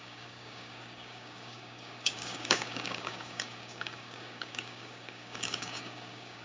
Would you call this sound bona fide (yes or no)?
no